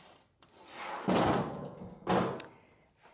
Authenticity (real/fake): real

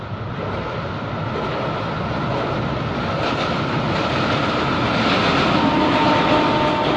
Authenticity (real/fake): real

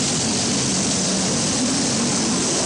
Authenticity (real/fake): real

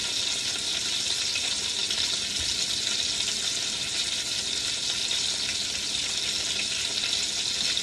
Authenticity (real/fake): real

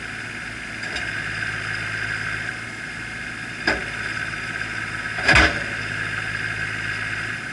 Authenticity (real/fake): real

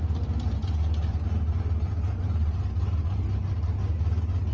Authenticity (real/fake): real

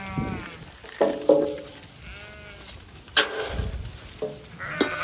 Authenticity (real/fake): real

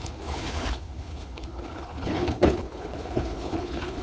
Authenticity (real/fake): fake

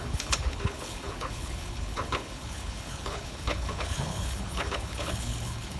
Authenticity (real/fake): fake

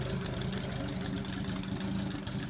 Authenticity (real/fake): real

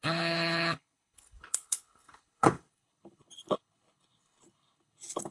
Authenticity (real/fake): fake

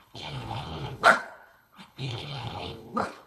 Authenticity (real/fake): fake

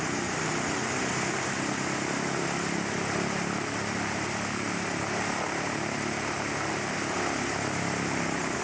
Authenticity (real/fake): real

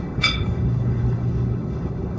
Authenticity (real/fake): fake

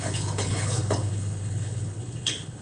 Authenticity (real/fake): fake